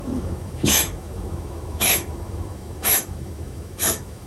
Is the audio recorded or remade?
remade